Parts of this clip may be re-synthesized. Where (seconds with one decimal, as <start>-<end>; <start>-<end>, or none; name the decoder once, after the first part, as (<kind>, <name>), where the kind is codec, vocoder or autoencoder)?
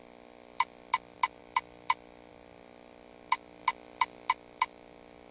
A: none